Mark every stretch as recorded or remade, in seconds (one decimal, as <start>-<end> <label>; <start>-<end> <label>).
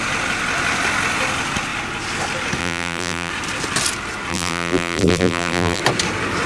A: 0.0-2.6 recorded; 2.6-3.3 remade; 3.3-4.3 recorded; 4.3-5.8 remade; 5.8-6.5 recorded